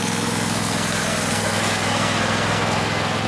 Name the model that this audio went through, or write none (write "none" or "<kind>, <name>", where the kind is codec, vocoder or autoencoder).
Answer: codec, SNAC